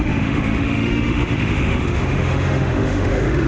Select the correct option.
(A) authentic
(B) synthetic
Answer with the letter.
B